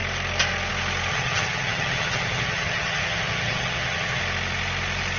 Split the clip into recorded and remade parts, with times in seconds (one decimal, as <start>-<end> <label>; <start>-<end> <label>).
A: 0.0-1.1 recorded; 1.1-4.2 remade; 4.2-5.2 recorded